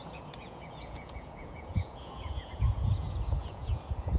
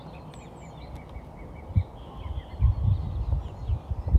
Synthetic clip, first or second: first